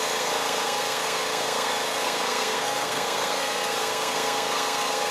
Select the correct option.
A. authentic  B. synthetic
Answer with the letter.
B